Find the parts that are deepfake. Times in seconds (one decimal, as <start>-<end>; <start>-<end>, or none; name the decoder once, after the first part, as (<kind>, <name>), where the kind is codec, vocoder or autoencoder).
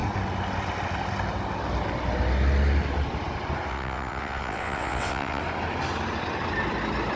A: 3.7-5.4 (vocoder, WaveNeXt)